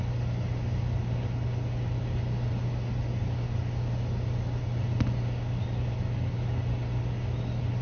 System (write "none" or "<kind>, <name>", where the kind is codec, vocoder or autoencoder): none